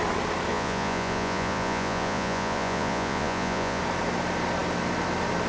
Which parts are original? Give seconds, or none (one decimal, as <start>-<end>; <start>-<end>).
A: 0.0-0.5; 3.8-5.5